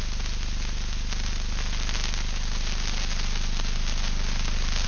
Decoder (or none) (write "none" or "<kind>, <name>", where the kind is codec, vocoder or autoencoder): none